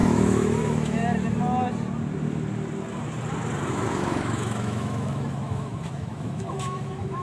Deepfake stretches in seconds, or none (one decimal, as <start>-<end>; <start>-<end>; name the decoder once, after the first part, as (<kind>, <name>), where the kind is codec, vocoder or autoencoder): 0.0-1.0 (autoencoder, DAC-VAE); 3.7-7.2